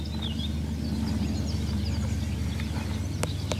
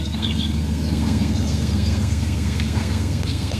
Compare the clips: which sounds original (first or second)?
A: first